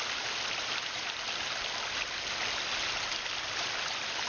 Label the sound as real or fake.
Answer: real